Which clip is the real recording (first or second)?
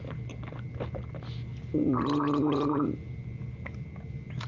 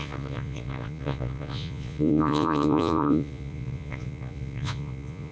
first